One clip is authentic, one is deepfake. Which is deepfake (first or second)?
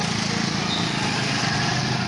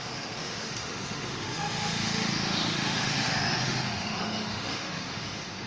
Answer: second